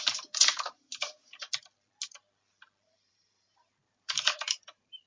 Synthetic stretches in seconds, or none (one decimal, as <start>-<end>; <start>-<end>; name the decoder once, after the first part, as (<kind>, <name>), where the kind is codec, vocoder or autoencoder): 0.0-0.9 (vocoder, BigVGAN v2); 3.1-5.1